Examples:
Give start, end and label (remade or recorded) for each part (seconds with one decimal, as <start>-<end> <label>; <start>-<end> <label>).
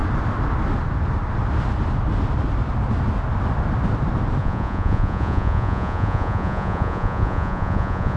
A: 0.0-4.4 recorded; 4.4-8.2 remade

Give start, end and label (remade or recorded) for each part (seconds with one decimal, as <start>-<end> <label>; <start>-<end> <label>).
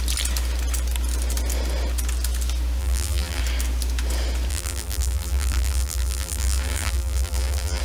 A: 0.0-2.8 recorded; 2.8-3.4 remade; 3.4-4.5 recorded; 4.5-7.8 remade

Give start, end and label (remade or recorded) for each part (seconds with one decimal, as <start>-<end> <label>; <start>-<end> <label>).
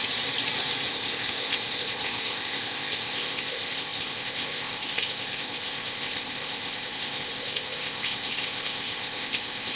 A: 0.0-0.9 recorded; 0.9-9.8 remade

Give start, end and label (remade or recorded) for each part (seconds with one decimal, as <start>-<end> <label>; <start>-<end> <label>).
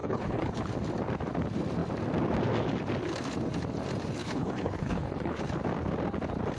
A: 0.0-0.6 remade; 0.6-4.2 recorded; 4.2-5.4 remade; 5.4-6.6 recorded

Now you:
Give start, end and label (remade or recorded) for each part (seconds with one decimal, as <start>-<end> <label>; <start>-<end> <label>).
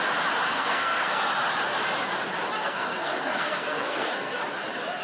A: 0.0-0.5 recorded; 0.5-1.3 remade; 1.3-2.6 recorded; 2.6-4.4 remade; 4.4-5.0 recorded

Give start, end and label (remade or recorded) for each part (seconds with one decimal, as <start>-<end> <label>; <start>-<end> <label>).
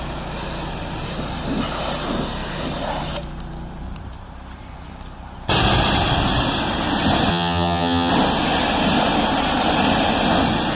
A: 0.0-7.3 recorded; 7.3-8.1 remade; 8.1-10.7 recorded